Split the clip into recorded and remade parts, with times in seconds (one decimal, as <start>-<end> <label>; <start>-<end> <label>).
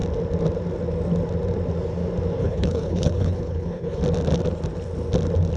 0.0-2.4 recorded; 2.4-4.0 remade; 4.0-5.6 recorded